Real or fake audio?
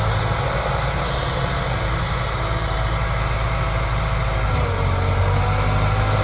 real